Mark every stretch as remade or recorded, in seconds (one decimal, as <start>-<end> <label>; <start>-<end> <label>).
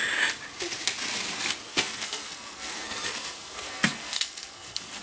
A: 0.0-1.7 recorded; 1.7-5.0 remade